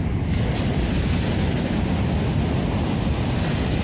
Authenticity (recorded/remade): recorded